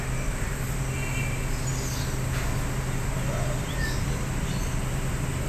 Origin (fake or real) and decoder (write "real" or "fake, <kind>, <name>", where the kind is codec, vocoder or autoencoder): real